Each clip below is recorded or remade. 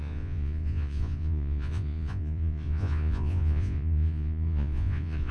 remade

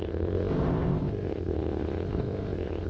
remade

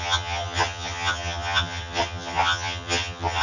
remade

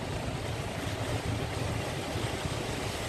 recorded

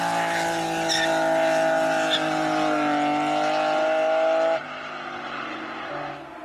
recorded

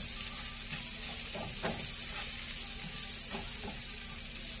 recorded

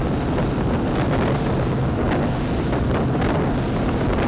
recorded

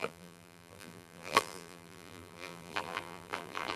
remade